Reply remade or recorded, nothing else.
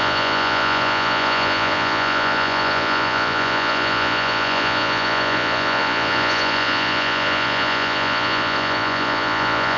remade